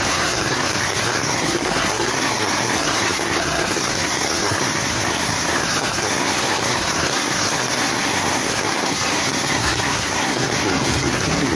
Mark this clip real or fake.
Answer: fake